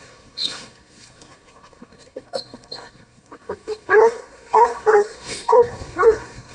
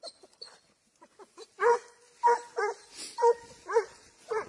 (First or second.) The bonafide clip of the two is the second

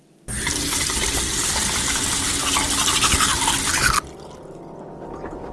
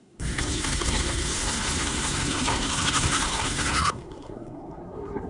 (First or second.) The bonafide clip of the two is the first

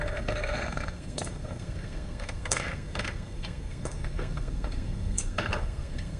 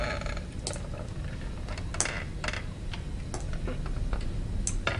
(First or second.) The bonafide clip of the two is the second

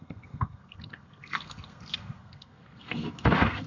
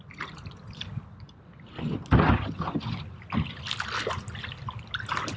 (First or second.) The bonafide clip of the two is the second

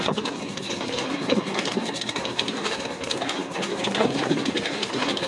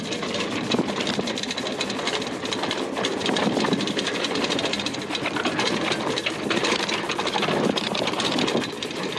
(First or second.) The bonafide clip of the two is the second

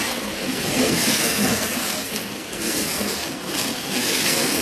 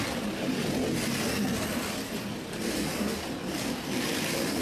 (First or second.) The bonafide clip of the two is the second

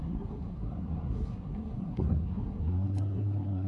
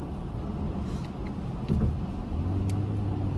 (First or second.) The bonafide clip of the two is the second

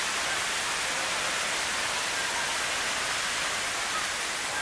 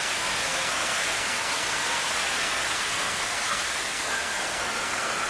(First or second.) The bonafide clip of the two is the first